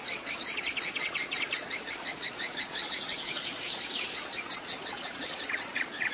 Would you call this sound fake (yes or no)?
yes